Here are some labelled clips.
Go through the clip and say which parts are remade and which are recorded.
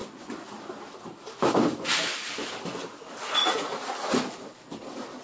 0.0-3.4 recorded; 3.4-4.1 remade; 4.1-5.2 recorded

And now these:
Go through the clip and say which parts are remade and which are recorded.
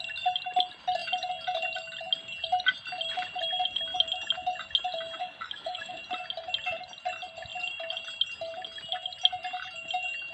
0.0-5.2 recorded; 5.2-6.0 remade; 6.0-10.3 recorded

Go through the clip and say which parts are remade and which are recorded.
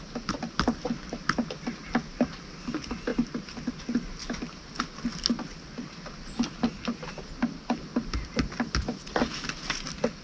0.0-10.2 recorded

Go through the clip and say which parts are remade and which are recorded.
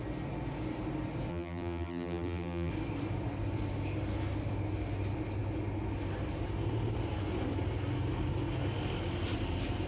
0.0-1.3 recorded; 1.3-2.7 remade; 2.7-9.9 recorded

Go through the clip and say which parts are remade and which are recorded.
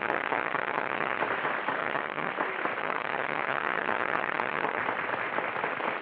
0.0-1.2 remade; 1.2-1.8 recorded; 1.8-2.3 remade; 2.3-2.8 recorded; 2.8-4.8 remade; 4.8-6.0 recorded